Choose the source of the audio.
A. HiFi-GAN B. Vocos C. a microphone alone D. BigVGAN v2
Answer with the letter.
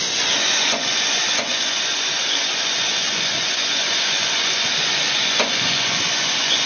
B